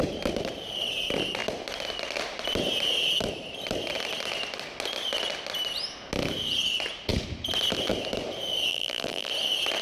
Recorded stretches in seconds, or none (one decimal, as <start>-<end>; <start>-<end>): 0.0-8.7; 9.3-9.8